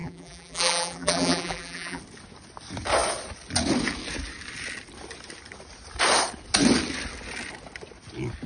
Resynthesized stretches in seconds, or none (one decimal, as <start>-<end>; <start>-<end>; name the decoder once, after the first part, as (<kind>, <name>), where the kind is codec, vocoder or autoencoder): 0.0-2.0 (vocoder, BigVGAN v2)